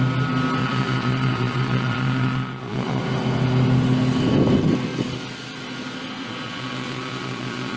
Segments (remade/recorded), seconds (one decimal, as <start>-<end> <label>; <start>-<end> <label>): 0.0-0.6 recorded; 0.6-3.0 remade; 3.0-6.2 recorded; 6.2-7.8 remade